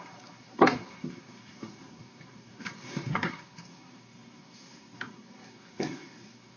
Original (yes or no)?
no